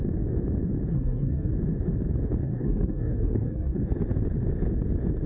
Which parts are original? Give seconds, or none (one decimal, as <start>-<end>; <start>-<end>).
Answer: 0.0-0.9; 1.5-2.4; 3.8-5.3